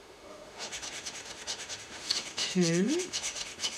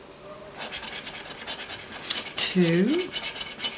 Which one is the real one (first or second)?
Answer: second